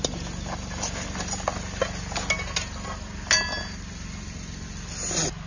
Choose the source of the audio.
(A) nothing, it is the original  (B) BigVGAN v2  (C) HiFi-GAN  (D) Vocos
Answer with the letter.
A